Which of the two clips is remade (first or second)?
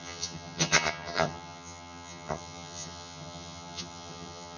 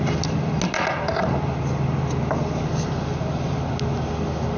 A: first